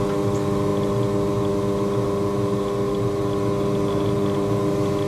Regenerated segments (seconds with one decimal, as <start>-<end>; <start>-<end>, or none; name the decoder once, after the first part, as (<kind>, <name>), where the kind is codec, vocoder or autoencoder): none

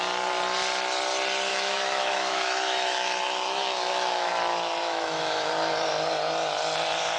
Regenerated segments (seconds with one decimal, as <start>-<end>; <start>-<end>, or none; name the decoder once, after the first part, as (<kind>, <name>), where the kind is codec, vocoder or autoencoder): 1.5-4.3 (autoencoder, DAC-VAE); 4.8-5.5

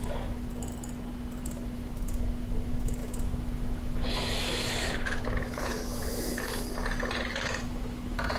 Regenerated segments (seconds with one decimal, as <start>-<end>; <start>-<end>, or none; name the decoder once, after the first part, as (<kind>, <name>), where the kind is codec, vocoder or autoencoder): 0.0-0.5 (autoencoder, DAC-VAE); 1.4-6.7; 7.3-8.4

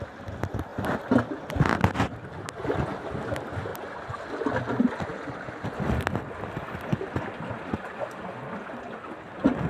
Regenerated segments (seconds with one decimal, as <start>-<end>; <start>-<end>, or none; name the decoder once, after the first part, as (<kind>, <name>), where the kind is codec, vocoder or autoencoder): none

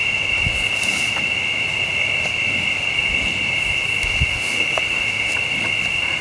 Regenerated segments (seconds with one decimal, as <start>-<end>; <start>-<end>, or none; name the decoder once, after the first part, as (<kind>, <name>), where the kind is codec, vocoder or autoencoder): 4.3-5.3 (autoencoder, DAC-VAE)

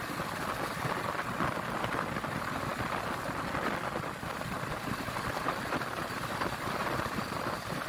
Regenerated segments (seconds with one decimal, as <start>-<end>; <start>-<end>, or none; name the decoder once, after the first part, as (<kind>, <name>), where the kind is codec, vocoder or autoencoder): none

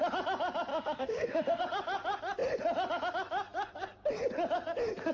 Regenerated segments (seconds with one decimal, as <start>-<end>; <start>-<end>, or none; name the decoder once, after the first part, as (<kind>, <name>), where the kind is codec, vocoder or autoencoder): 0.7-1.6 (autoencoder, DAC-VAE)

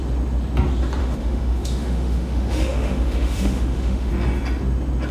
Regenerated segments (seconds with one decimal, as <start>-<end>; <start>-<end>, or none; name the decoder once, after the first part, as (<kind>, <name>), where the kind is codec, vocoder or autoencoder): 1.0-4.1 (autoencoder, DAC-VAE)